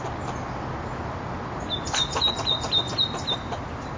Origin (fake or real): real